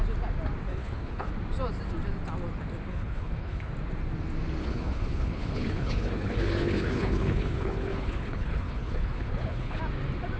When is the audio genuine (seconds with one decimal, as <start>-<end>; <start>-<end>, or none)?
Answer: 0.0-0.7; 1.3-2.9; 3.7-4.6; 9.8-10.4